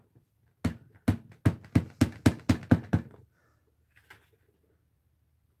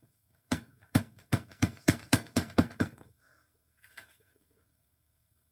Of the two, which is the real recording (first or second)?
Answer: first